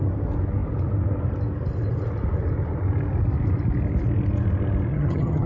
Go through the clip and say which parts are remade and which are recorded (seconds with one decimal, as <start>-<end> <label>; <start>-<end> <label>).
0.0-4.9 recorded; 4.9-5.5 remade